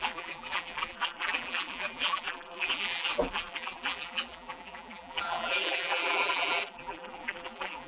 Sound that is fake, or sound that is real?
fake